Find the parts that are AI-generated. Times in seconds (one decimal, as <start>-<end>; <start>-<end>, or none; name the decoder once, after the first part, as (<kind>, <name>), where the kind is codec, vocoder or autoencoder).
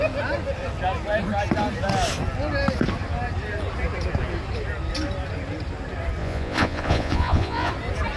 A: 6.2-7.7 (vocoder, Vocos)